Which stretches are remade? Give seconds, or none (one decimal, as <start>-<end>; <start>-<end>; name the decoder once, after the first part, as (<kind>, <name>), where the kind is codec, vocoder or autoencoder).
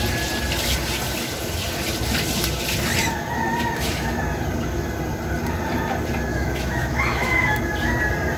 6.3-7.6 (autoencoder, DAC-VAE)